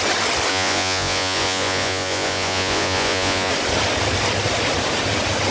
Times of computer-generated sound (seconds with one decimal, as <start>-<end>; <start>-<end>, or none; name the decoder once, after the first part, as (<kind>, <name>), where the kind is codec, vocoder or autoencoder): 0.5-3.5 (vocoder, Vocos)